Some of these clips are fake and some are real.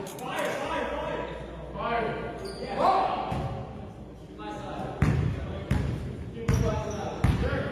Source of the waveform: real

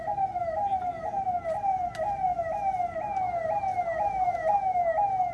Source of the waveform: real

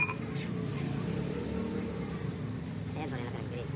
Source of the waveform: real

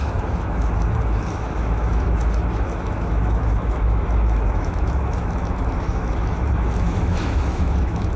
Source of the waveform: fake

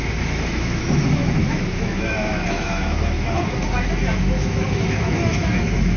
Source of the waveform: fake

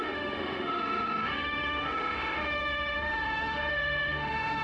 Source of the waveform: fake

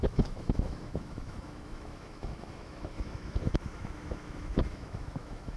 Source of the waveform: fake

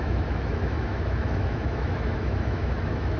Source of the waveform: fake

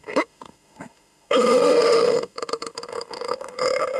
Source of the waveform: fake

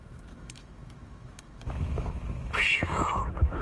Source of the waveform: fake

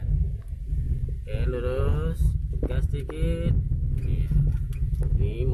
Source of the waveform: real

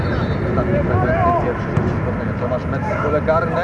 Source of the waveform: real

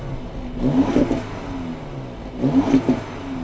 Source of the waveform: real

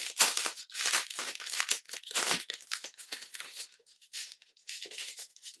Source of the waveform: fake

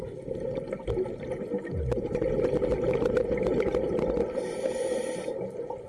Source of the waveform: real